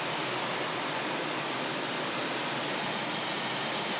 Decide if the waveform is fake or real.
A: real